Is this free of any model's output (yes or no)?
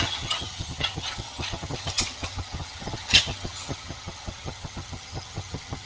no